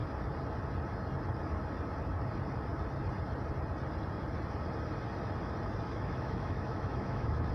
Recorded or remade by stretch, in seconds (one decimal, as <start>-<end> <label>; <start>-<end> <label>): 0.0-5.9 recorded; 5.9-7.5 remade